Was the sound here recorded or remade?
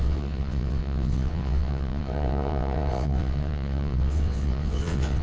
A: remade